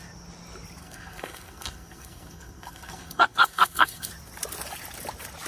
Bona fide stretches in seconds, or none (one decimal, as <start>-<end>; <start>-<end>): 0.0-0.8; 4.1-5.5